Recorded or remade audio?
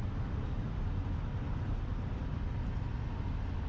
recorded